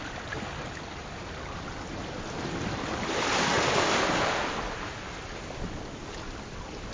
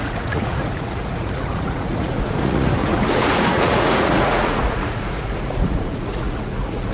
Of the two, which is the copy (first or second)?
second